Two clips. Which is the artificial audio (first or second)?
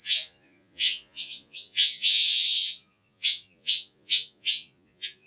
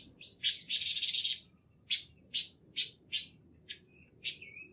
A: first